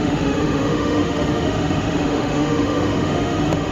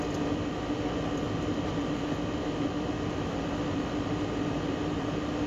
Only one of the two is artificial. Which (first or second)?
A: first